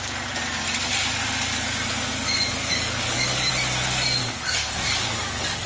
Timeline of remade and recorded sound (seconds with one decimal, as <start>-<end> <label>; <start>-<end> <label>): 0.0-2.5 recorded; 2.5-3.5 remade; 3.5-4.2 recorded; 4.2-5.7 remade